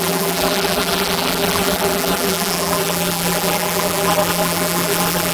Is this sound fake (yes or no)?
yes